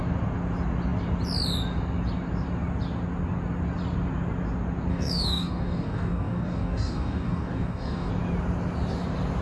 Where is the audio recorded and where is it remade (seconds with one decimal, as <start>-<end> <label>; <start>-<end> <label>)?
0.0-4.9 recorded; 4.9-8.1 remade; 8.1-9.4 recorded